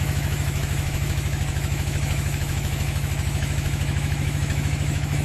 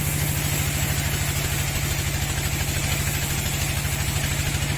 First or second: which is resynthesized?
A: first